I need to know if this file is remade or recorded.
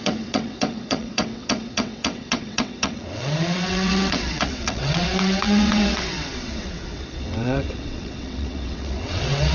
remade